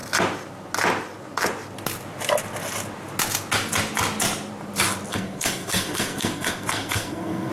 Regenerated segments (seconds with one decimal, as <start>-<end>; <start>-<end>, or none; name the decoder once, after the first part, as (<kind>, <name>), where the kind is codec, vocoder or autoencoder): 5.1-7.5 (codec, SNAC)